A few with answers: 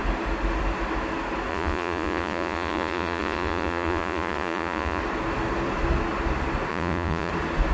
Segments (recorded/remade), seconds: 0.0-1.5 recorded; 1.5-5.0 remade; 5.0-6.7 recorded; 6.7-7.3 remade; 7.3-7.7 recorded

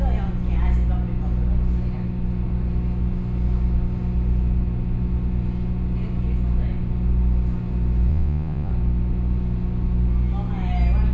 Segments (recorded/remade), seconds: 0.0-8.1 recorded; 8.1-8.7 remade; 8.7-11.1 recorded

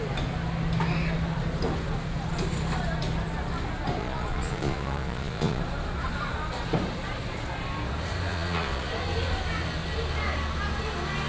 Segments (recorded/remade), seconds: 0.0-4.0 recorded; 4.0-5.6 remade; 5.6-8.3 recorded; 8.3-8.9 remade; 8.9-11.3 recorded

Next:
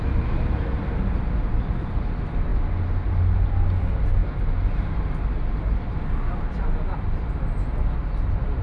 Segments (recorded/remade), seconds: 0.0-8.6 recorded

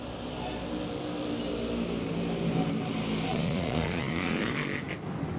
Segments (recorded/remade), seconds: 0.0-3.3 recorded; 3.3-4.5 remade; 4.5-5.4 recorded

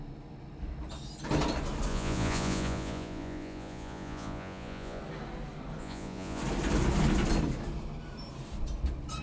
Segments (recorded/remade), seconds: 0.0-1.9 recorded; 1.9-5.0 remade; 5.0-5.8 recorded; 5.8-6.4 remade; 6.4-9.2 recorded